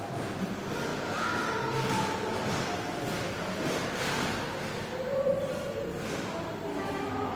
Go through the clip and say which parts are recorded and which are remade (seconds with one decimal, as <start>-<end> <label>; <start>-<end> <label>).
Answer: 0.0-6.7 recorded; 6.7-7.4 remade